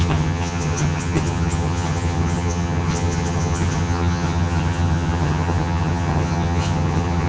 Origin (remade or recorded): remade